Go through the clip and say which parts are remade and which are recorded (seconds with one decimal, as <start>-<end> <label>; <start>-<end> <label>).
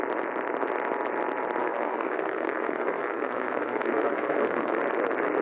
0.0-1.6 recorded; 1.6-4.8 remade; 4.8-5.4 recorded